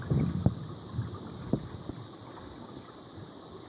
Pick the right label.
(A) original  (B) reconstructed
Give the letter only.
A